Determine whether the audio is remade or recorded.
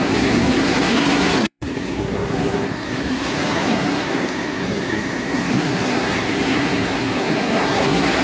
remade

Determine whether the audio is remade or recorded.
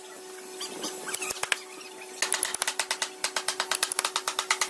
recorded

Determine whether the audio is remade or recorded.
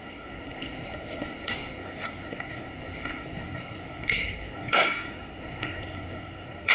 remade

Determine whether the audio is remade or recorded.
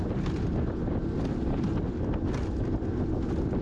recorded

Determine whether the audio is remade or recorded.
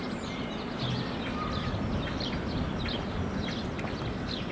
recorded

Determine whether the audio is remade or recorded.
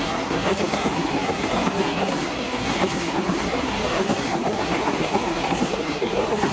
remade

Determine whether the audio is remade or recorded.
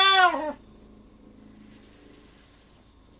recorded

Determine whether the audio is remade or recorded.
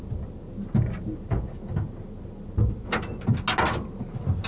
recorded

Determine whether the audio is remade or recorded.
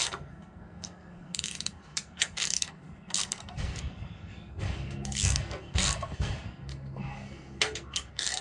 remade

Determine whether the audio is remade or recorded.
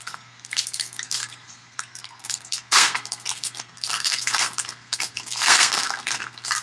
remade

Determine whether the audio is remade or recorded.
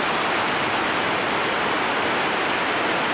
recorded